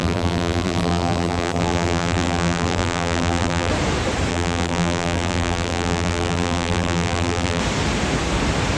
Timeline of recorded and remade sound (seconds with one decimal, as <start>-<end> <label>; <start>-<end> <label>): 0.0-3.7 remade; 3.7-4.3 recorded; 4.3-7.6 remade; 7.6-8.8 recorded